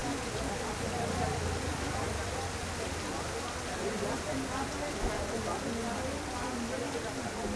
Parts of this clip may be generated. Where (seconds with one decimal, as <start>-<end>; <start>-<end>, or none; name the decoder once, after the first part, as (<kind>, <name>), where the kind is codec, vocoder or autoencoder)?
none